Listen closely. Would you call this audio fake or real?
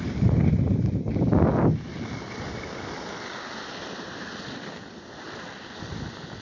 real